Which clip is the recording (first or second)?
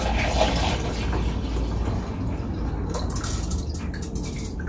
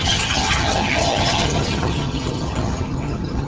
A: first